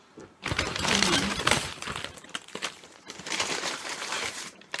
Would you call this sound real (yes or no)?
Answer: no